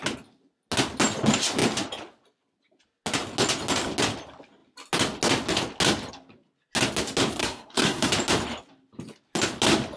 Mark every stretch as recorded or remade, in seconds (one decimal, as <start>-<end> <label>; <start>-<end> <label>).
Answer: 0.0-7.4 recorded; 7.4-8.1 remade; 8.1-10.0 recorded